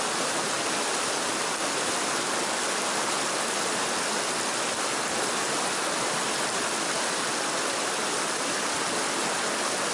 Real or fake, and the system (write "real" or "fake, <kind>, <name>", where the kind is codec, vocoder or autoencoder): real